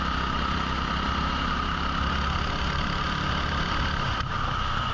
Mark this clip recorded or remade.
recorded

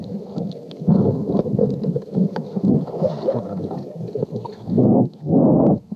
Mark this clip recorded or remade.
remade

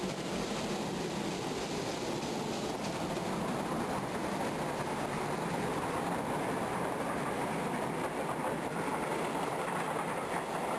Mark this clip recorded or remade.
recorded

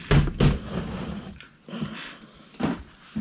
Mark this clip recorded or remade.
recorded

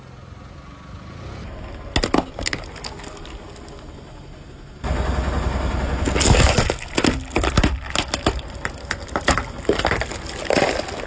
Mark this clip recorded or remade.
recorded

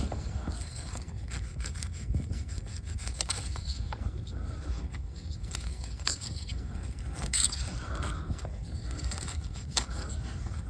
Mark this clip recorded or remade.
remade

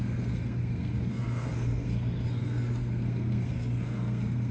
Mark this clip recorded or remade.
remade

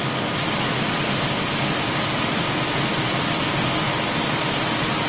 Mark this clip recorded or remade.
recorded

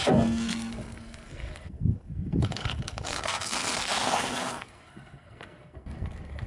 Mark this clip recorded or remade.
remade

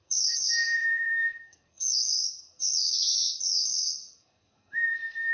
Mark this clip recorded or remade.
remade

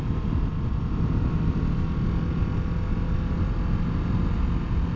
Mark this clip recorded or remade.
recorded